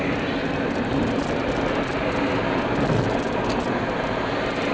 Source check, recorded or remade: recorded